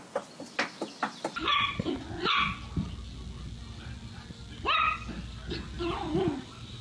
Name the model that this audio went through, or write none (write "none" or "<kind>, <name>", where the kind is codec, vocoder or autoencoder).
none